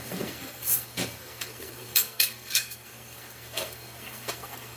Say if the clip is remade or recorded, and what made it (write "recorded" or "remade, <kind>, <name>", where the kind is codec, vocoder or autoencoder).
remade, codec, SNAC